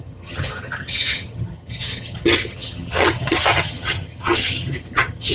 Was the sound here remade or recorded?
remade